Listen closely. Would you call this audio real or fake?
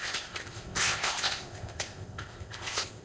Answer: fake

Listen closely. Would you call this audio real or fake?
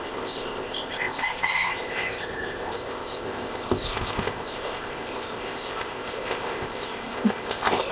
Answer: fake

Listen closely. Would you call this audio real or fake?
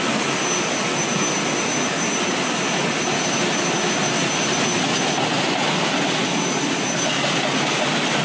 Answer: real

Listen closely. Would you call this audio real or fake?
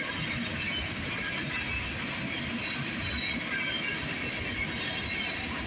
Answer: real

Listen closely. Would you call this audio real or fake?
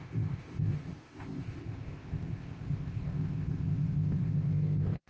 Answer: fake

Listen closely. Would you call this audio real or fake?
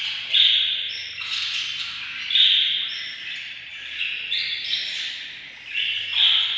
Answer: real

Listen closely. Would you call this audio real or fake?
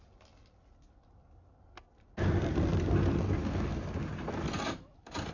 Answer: real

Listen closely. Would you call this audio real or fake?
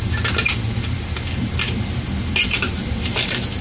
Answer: real